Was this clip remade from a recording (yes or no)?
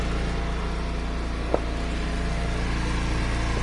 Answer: no